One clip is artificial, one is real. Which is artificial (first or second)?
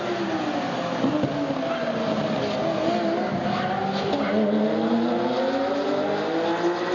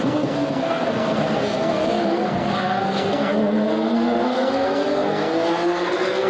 second